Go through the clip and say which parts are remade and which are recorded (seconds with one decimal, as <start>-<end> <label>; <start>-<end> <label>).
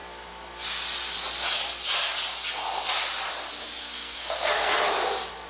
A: 0.0-3.8 recorded; 3.8-4.8 remade; 4.8-5.5 recorded